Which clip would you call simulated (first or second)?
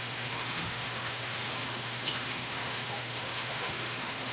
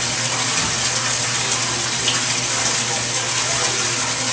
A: first